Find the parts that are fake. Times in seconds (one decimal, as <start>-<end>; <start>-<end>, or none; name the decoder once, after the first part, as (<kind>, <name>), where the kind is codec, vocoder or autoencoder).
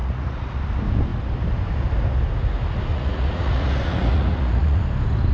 0.0-0.6 (vocoder, Vocos); 2.9-4.8